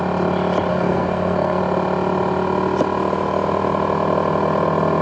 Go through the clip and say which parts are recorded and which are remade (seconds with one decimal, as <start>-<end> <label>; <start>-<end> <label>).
0.0-0.7 recorded; 0.7-1.6 remade; 1.6-5.0 recorded